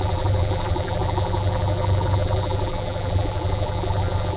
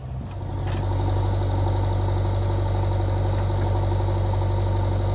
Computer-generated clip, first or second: first